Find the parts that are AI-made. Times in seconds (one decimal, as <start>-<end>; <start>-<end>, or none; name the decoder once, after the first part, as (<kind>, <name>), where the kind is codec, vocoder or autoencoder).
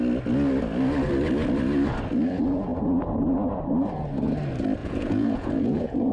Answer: 4.8-6.1 (vocoder, Vocos)